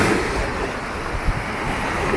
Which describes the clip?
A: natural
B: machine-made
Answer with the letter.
A